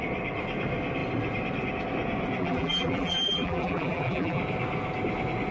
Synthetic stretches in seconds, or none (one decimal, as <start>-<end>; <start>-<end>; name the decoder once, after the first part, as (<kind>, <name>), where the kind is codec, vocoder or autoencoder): 2.4-4.4 (vocoder, BigVGAN v2)